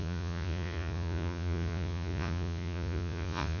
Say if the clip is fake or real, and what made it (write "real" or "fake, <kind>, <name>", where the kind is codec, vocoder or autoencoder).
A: fake, vocoder, Vocos